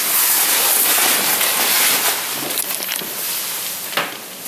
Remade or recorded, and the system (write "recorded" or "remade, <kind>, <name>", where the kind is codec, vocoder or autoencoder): recorded